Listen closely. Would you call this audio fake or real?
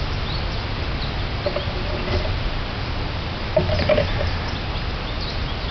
real